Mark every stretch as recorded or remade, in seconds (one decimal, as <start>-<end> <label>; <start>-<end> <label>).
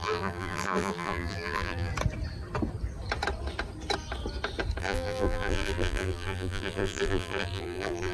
0.0-1.9 remade; 1.9-4.8 recorded; 4.8-8.1 remade